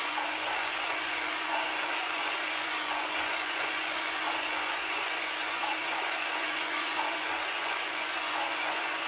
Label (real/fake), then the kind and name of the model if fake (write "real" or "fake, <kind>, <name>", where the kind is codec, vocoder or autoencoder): fake, vocoder, Vocos